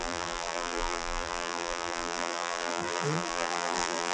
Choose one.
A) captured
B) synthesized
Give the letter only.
B